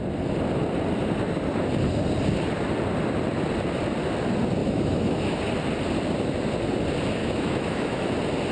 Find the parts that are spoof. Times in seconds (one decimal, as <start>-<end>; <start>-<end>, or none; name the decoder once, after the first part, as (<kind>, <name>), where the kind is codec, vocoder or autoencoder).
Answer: 4.6-5.4 (autoencoder, DAC-VAE); 7.2-8.1